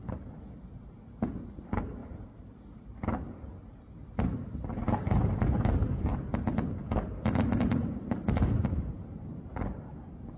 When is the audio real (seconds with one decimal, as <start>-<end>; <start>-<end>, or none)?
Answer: 0.0-7.5; 9.9-10.4